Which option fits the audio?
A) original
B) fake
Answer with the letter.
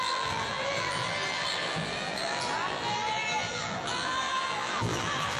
B